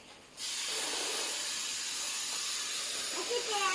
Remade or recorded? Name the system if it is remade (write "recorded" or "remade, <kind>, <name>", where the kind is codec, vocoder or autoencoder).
recorded